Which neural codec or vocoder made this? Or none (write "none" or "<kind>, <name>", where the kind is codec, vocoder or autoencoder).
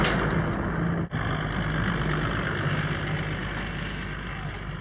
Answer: none